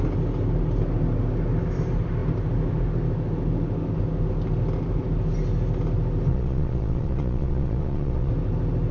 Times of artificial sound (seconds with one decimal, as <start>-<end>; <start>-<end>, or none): 6.3-8.3